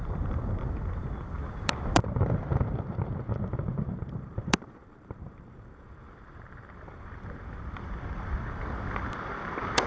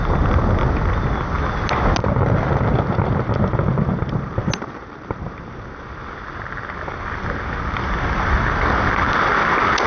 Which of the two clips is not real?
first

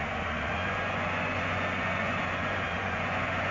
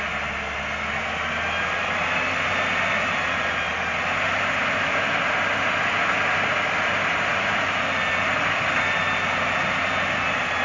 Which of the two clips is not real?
first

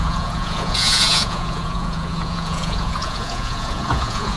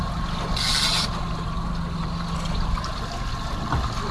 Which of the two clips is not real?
first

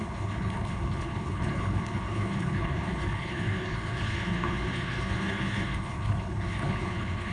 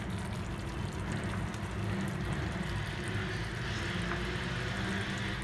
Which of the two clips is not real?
first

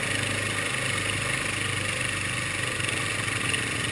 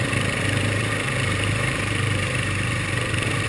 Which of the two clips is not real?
second